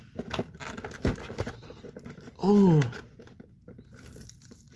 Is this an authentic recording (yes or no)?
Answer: yes